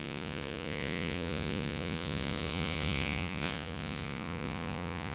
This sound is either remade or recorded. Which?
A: remade